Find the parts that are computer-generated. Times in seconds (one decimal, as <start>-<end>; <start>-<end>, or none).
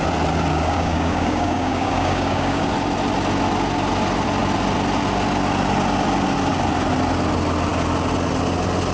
0.5-2.7